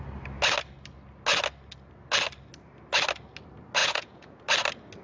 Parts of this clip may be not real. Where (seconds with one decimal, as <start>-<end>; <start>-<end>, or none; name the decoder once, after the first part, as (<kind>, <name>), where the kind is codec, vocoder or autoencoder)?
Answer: 3.8-4.4 (vocoder, Vocos)